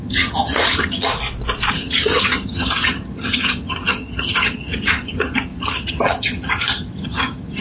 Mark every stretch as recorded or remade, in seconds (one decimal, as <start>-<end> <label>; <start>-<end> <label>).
0.0-1.1 remade; 1.1-1.7 recorded; 1.7-7.6 remade